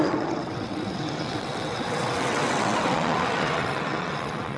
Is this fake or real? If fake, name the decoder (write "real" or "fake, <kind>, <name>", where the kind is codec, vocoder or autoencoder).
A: fake, vocoder, WaveNeXt